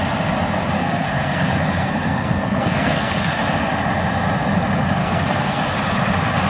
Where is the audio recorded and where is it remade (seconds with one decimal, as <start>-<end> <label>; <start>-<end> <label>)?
0.0-0.8 recorded; 0.8-3.4 remade; 3.4-5.0 recorded; 5.0-5.6 remade; 5.6-6.5 recorded